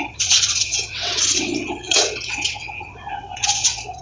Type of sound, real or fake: fake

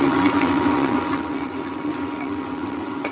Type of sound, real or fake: fake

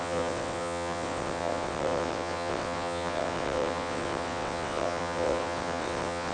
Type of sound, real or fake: fake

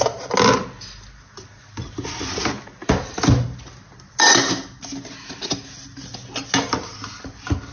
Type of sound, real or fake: real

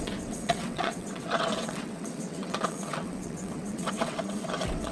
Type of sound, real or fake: fake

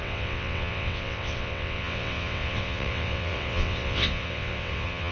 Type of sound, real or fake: fake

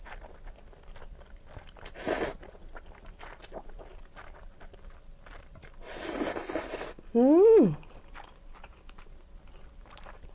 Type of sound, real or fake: real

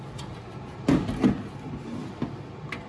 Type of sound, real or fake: real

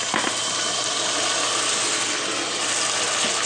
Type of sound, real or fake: real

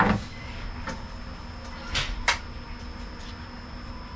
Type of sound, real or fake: real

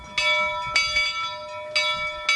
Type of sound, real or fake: real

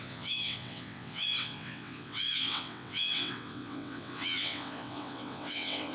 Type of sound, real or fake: fake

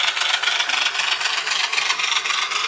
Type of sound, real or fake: real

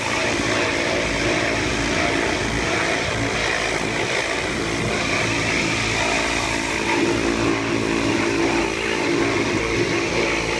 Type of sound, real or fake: real